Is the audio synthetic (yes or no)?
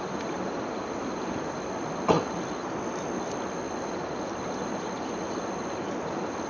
no